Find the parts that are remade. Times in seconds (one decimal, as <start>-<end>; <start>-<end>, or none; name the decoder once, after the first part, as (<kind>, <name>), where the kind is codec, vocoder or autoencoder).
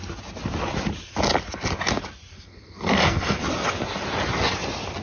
2.3-3.4 (codec, SNAC)